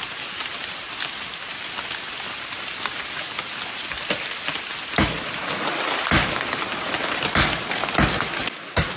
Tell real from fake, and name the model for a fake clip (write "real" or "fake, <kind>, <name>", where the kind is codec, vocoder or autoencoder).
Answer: real